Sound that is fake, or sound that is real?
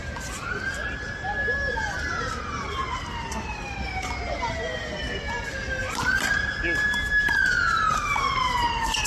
real